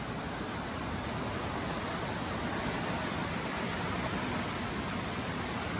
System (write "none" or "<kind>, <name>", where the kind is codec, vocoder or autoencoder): none